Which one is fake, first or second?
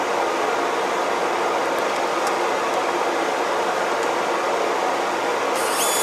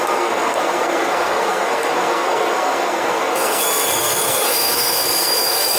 second